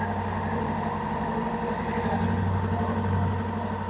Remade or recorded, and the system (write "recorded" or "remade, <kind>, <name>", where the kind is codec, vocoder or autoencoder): recorded